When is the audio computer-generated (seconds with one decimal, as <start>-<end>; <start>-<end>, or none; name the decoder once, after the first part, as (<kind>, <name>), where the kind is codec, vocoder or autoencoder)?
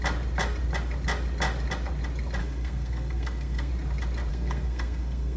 2.4-3.7 (codec, SNAC); 4.3-5.4